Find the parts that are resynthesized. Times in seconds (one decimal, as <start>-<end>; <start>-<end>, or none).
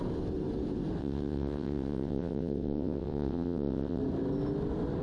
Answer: 1.0-4.0